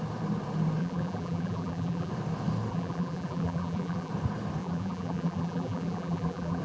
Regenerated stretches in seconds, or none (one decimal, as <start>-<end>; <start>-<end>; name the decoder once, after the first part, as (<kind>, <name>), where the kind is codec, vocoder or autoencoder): 0.8-2.1 (vocoder, BigVGAN v2); 2.7-4.1; 4.6-6.6